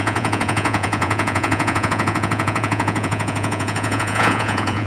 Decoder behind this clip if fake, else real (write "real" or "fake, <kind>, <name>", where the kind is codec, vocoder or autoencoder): fake, vocoder, Vocos